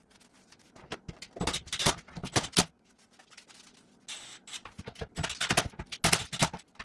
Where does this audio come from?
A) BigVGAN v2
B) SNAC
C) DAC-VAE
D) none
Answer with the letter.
D